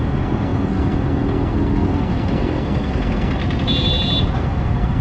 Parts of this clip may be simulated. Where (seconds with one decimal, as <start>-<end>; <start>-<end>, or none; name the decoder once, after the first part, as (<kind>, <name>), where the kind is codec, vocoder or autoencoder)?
0.0-3.4 (codec, SNAC); 4.4-5.0